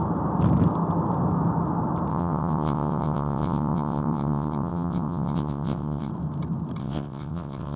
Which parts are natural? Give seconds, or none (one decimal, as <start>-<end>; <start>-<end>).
0.0-2.1; 6.1-6.8